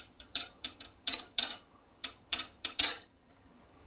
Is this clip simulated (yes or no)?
yes